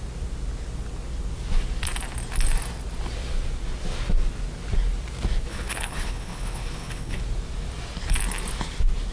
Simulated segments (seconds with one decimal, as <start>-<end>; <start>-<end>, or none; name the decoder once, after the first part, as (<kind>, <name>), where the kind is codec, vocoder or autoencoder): 5.5-7.2 (codec, HILCodec)